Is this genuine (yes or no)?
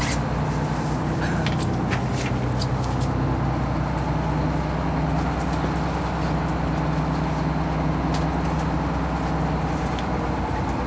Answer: yes